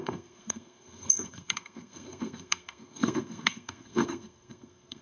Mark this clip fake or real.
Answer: fake